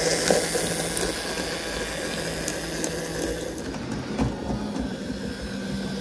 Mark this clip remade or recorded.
recorded